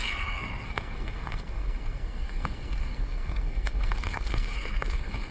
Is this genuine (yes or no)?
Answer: no